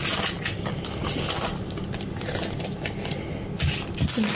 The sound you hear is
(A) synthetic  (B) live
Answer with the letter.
B